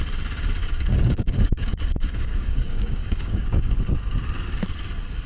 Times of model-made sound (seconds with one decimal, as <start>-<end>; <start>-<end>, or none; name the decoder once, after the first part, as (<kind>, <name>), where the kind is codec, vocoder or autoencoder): 0.6-3.8 (codec, DAC)